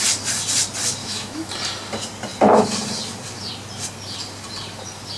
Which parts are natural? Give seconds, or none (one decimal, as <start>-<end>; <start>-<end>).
0.0-1.0; 1.5-5.2